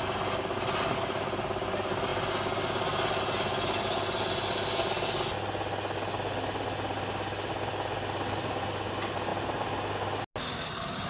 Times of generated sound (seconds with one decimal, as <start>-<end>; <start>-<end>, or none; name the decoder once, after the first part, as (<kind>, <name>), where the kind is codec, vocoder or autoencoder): none